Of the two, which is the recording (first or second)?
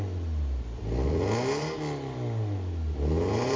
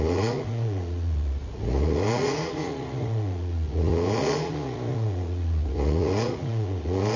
first